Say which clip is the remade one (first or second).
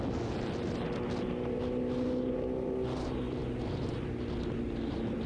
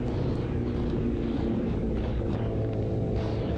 second